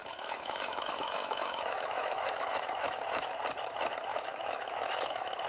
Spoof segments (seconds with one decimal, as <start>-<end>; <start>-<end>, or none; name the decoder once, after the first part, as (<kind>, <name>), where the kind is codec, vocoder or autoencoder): 0.0-3.3 (autoencoder, DAC-VAE); 4.1-5.5